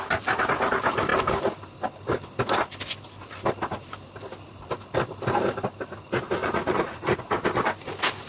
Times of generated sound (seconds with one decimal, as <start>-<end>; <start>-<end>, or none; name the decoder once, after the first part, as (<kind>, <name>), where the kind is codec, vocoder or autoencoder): 6.4-7.3 (vocoder, Vocos)